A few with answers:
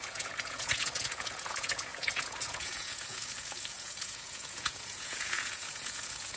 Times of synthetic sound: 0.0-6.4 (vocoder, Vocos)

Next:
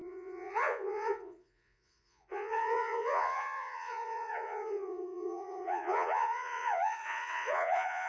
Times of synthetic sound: 0.0-8.1 (vocoder, Vocos)

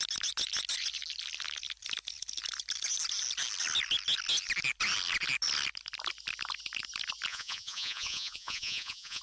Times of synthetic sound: 7.3-9.2 (vocoder, Vocos)

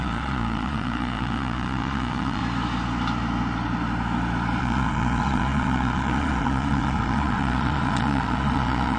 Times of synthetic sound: 0.0-2.4 (vocoder, Vocos); 4.6-9.0